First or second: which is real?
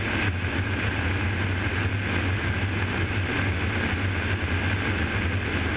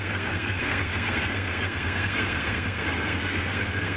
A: first